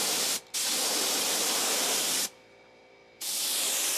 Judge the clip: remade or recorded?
recorded